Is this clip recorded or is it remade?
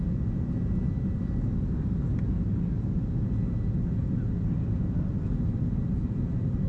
recorded